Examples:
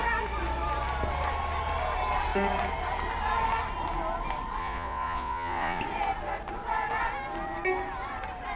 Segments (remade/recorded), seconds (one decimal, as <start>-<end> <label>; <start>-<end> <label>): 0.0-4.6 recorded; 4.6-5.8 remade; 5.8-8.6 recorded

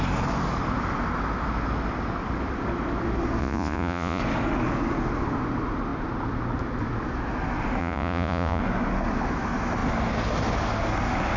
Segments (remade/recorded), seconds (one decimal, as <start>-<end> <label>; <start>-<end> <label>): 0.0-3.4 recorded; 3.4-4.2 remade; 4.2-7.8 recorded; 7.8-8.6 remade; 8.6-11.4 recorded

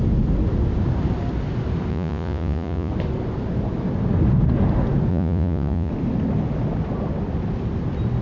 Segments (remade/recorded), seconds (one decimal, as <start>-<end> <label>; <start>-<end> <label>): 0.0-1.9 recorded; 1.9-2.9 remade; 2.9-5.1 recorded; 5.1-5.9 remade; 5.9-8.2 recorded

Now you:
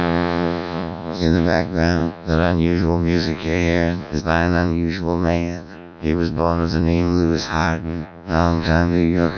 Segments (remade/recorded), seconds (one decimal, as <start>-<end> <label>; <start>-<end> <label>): 0.0-9.4 remade

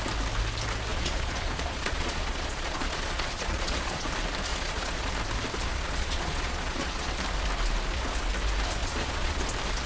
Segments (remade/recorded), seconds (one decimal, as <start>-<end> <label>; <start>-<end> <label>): 0.0-0.9 recorded; 0.9-4.1 remade; 4.1-4.5 recorded; 4.5-5.1 remade; 5.1-5.7 recorded; 5.7-7.1 remade; 7.1-8.8 recorded; 8.8-9.4 remade; 9.4-9.9 recorded